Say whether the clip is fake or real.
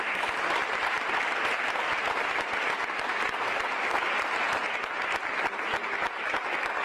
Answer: real